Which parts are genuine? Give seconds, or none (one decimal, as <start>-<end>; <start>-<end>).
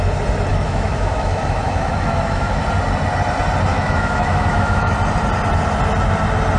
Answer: 0.0-0.5; 2.6-3.7; 4.9-6.6